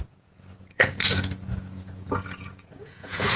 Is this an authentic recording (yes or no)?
no